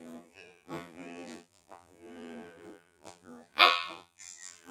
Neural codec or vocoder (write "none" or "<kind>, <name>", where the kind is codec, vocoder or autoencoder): vocoder, BigVGAN v2